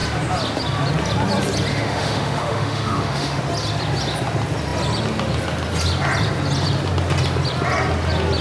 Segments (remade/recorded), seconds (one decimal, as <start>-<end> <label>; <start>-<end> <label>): 0.0-1.7 recorded; 1.7-3.4 remade; 3.4-8.4 recorded